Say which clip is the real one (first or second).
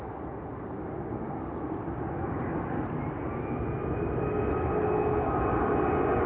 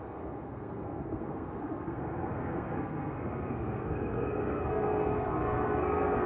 first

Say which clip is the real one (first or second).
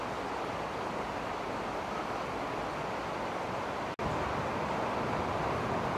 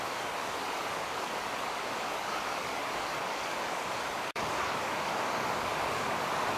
first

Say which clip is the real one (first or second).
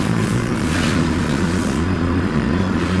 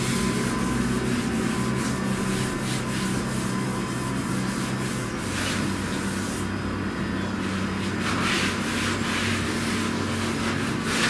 second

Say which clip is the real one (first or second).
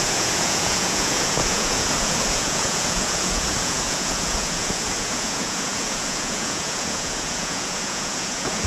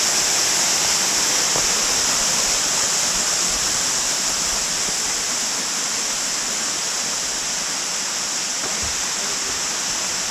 second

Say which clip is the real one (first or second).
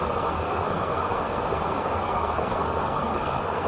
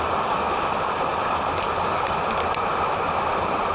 second